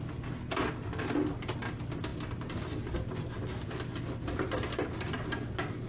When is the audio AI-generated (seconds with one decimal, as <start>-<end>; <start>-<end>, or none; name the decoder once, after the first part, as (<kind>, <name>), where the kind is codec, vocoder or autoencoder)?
none